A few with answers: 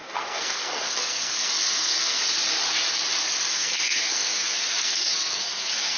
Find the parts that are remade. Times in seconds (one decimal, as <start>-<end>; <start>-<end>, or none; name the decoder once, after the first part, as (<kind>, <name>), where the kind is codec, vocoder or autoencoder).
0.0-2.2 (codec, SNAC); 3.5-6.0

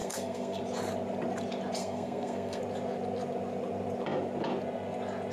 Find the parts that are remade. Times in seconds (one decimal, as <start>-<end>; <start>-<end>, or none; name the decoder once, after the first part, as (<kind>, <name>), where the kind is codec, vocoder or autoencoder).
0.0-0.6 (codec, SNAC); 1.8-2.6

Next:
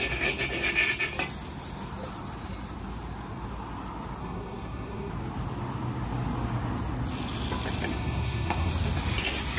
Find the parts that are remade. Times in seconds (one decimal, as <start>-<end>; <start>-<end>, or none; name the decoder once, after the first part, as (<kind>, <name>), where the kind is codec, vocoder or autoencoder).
4.2-5.1 (codec, SNAC); 7.9-8.7

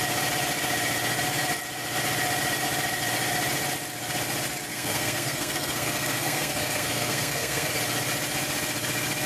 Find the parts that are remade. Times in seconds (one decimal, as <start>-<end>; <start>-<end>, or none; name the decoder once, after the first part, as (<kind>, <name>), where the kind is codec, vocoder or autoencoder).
4.7-7.7 (codec, SNAC)